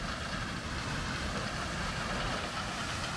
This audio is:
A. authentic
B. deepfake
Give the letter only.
B